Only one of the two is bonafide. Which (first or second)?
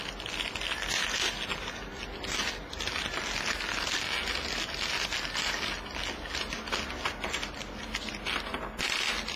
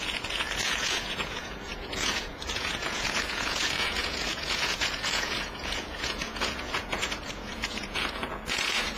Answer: first